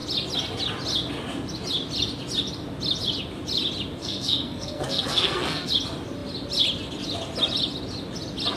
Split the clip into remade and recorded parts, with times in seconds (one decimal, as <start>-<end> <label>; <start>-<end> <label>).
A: 0.0-4.0 recorded; 4.0-5.7 remade; 5.7-8.6 recorded

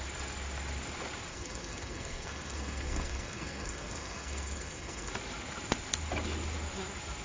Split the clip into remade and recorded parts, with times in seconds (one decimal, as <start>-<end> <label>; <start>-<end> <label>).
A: 0.0-1.3 recorded; 1.3-5.1 remade; 5.1-7.2 recorded